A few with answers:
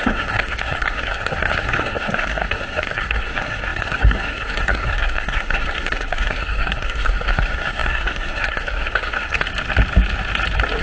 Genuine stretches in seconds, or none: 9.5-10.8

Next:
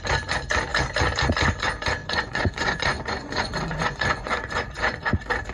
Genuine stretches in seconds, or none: 0.0-2.0; 5.1-5.5

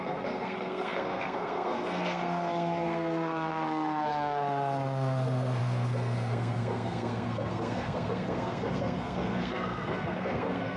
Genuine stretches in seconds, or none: none

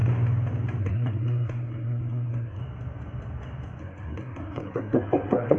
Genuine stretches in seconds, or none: 0.0-0.8; 2.6-3.8

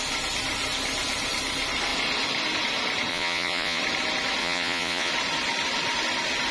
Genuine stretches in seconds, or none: 0.0-3.1; 3.8-4.4; 5.1-6.5

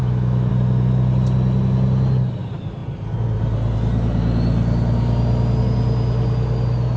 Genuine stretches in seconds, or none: 0.5-7.0